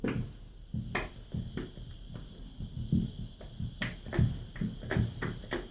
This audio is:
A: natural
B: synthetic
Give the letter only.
A